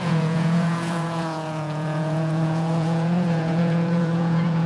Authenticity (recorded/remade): remade